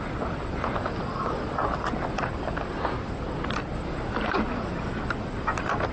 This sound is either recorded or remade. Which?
recorded